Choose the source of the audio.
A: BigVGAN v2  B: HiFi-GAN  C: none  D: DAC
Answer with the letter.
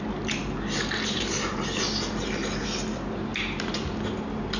C